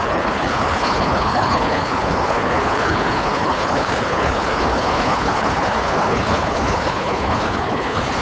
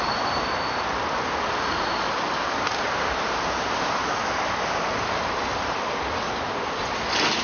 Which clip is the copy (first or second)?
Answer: first